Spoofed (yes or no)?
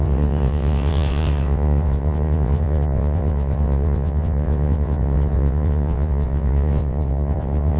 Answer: yes